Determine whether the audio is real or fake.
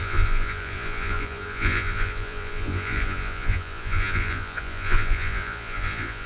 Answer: fake